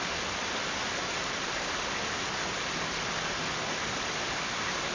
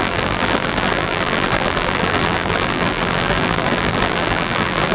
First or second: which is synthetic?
second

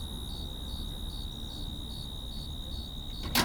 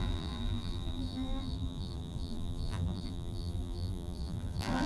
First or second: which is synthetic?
second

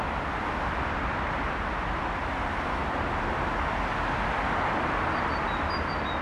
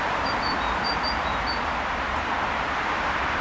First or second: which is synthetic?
second